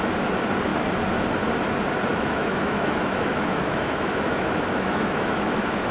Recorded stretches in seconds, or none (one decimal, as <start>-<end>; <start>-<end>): 0.0-2.1